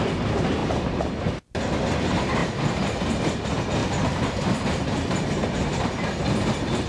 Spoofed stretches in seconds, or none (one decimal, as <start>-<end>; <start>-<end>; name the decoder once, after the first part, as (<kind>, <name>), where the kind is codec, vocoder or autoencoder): 0.6-1.2 (vocoder, BigVGAN v2); 3.8-5.3